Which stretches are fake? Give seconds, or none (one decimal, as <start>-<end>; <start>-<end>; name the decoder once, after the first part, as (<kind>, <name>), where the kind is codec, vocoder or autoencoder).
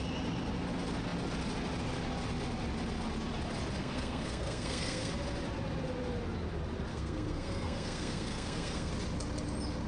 3.8-5.1 (codec, SNAC); 6.9-8.9